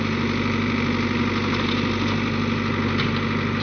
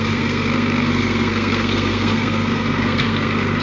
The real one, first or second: first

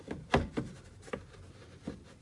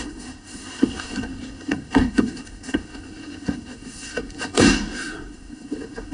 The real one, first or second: first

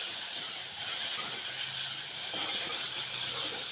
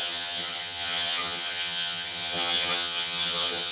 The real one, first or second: first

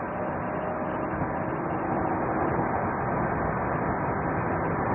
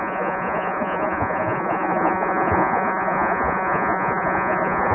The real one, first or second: first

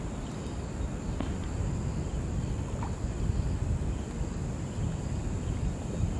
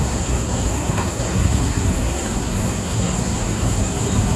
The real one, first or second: first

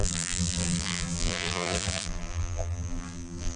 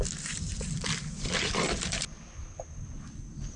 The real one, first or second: second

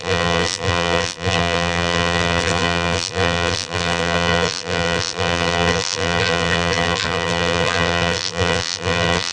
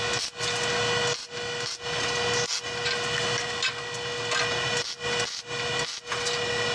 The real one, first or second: second